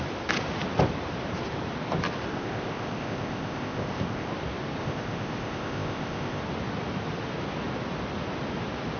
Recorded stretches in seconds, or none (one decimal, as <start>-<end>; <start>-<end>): 0.0-2.3; 4.3-4.8; 6.4-9.0